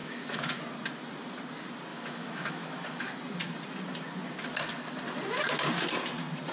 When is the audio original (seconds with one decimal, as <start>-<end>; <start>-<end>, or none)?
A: 0.6-1.9; 3.1-6.5